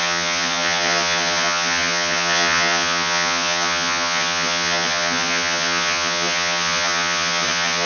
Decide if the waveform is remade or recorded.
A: remade